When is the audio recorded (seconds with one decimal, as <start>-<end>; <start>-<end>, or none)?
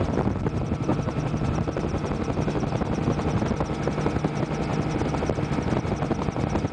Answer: 0.0-6.7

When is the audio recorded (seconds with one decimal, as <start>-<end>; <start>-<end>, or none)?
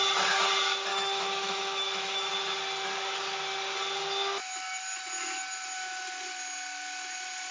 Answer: 0.0-0.9; 2.3-7.5